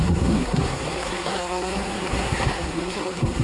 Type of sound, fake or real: fake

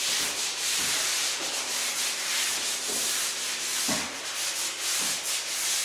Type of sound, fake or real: real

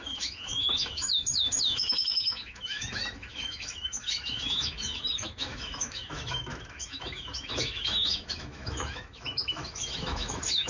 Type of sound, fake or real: fake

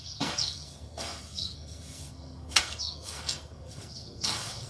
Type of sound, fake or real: fake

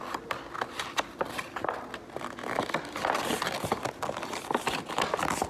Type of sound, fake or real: real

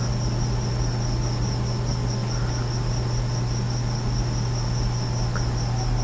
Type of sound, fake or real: real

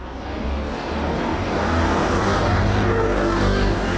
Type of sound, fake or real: fake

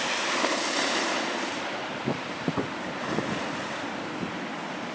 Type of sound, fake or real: fake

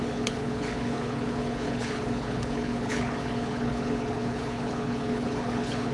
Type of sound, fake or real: fake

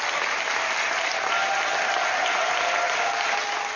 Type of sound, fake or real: real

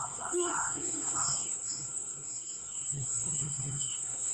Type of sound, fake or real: fake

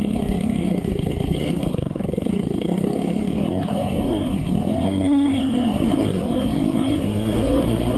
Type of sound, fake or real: fake